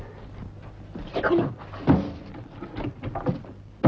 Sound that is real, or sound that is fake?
real